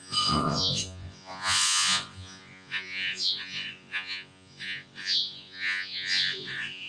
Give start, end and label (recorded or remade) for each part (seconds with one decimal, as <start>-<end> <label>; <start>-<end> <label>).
0.0-6.9 remade